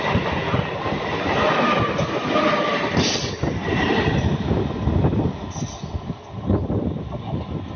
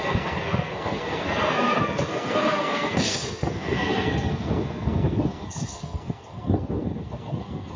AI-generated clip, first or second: second